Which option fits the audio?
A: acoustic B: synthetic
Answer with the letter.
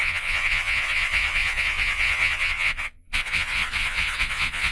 B